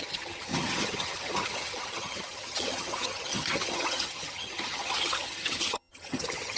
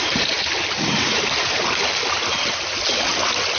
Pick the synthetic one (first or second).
first